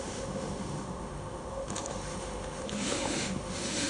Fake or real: fake